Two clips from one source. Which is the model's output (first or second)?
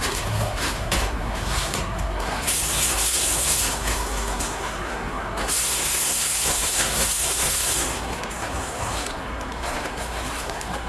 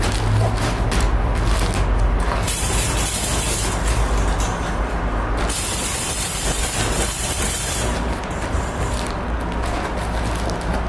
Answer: first